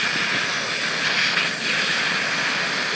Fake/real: real